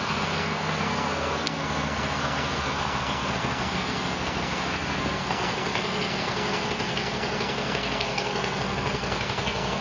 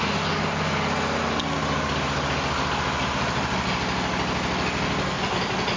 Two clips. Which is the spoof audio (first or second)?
first